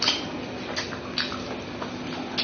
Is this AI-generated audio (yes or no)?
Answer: no